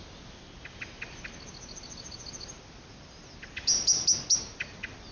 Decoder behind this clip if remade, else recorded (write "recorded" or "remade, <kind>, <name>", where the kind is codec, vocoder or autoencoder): recorded